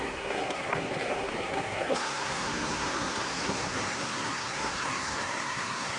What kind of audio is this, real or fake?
fake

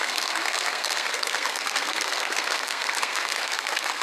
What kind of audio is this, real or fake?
fake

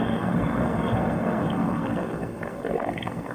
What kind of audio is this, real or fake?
fake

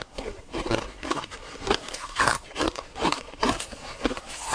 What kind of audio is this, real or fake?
fake